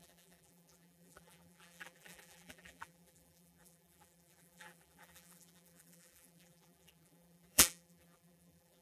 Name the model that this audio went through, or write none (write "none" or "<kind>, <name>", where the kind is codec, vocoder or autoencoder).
vocoder, BigVGAN v2